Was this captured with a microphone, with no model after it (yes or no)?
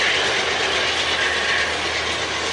yes